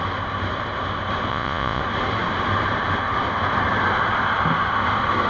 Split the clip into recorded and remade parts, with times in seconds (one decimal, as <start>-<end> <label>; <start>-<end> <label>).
0.0-1.3 recorded; 1.3-1.8 remade; 1.8-5.3 recorded